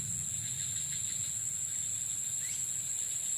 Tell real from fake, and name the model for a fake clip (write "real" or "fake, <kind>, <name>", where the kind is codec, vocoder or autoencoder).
real